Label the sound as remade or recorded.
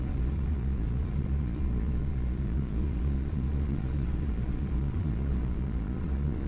remade